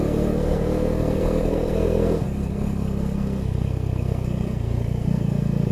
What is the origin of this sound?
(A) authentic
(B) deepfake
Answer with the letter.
B